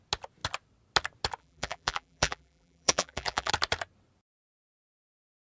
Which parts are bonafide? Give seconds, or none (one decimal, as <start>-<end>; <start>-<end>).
0.0-1.4; 3.5-5.6